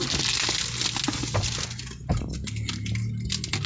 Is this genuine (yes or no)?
yes